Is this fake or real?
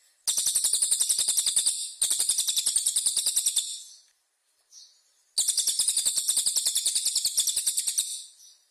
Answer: real